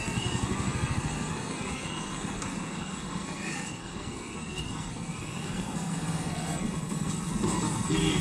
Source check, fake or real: fake